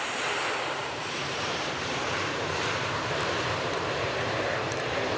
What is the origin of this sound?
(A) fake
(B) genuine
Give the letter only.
A